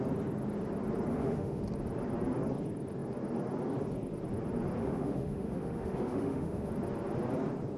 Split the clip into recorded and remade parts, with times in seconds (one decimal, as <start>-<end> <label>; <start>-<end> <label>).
0.0-1.1 recorded; 1.1-1.6 remade; 1.6-4.8 recorded; 4.8-6.7 remade; 6.7-7.8 recorded